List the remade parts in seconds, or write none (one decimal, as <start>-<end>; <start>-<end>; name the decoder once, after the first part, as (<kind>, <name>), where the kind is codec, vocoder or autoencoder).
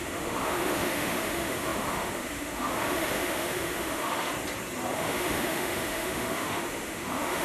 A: 0.0-4.3 (autoencoder, DAC-VAE); 4.9-7.4